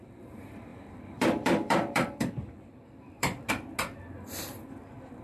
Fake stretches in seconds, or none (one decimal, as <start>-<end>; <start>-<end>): 0.7-3.5

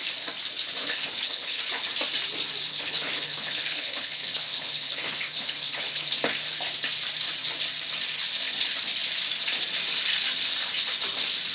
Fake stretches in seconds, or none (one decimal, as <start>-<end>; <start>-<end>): 0.8-1.6; 2.7-6.1

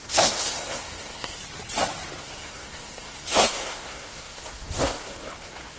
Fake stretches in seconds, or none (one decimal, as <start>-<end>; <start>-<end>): 0.0-1.4; 2.2-5.8

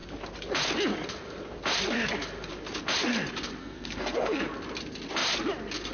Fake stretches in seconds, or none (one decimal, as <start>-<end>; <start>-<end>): 3.6-4.4

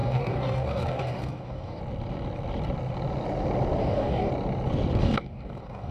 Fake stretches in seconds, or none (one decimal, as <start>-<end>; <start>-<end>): 0.0-1.8; 3.8-4.3; 5.0-5.9

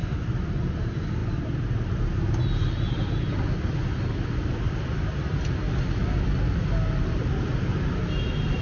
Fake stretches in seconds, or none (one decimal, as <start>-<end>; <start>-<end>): none

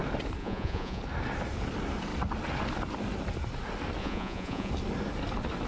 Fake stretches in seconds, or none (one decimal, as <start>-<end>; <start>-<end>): 0.4-1.0; 4.0-4.7

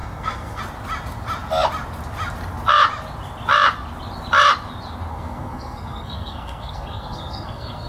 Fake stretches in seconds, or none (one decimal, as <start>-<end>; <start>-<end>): 0.0-0.6; 5.1-7.9